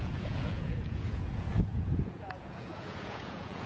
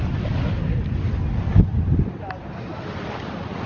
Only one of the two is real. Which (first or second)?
second